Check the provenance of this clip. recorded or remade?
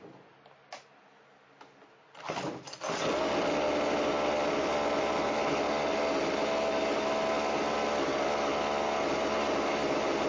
recorded